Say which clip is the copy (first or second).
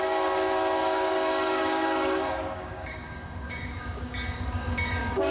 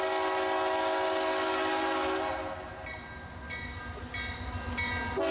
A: first